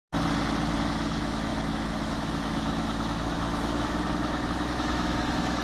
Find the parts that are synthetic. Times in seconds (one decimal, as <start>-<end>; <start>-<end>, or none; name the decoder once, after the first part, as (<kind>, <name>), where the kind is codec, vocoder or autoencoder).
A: 0.9-5.6 (autoencoder, DAC-VAE)